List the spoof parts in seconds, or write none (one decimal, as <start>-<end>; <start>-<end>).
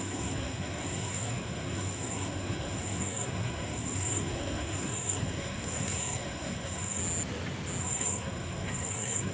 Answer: 0.0-7.0; 7.8-9.3